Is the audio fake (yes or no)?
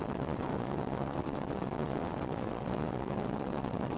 yes